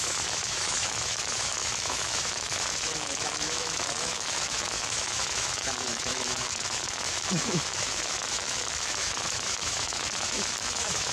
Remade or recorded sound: remade